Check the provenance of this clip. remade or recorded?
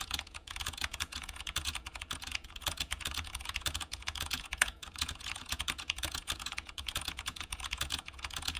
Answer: remade